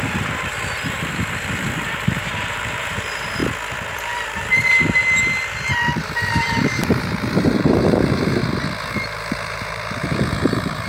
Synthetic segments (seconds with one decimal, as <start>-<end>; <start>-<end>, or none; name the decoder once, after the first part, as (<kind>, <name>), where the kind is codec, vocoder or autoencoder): 0.0-3.4 (vocoder, BigVGAN v2); 3.9-8.4; 8.9-10.9